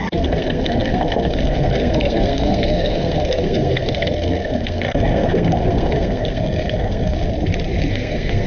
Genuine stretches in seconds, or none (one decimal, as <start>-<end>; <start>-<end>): 7.3-7.9